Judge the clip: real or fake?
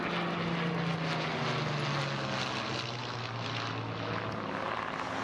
real